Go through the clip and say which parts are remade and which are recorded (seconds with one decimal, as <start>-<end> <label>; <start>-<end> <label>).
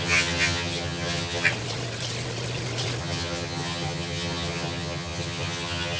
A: 0.0-1.5 remade; 1.5-3.0 recorded; 3.0-6.0 remade